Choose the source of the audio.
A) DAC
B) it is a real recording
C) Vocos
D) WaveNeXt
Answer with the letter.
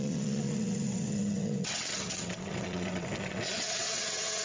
D